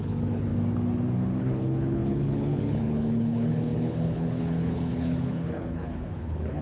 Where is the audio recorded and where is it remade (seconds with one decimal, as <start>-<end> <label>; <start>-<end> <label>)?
0.0-0.5 remade; 0.5-1.4 recorded; 1.4-6.6 remade